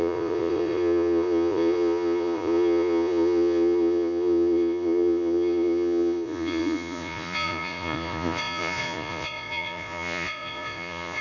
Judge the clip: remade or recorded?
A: remade